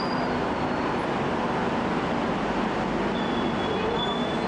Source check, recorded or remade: recorded